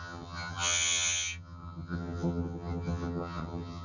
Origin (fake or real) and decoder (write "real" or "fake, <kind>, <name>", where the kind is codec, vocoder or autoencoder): fake, vocoder, HiFi-GAN